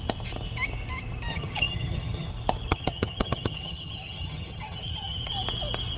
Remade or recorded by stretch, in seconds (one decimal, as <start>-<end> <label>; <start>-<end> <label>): 0.0-1.3 recorded; 1.3-2.3 remade; 2.3-2.7 recorded; 2.7-5.3 remade; 5.3-6.0 recorded